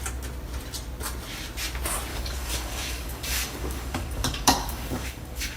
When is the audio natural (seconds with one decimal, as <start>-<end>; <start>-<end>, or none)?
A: 0.0-2.1